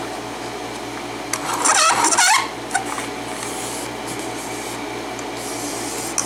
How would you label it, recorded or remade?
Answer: recorded